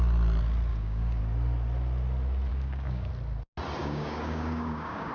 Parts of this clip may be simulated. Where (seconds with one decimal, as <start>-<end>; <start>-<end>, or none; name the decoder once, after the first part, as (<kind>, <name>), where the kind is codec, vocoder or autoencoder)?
0.7-1.2 (codec, DAC); 2.5-3.1; 3.8-5.1